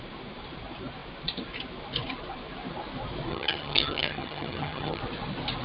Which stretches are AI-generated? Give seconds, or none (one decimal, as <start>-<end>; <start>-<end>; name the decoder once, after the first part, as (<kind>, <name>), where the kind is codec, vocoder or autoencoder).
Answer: 3.3-5.0 (vocoder, HiFi-GAN)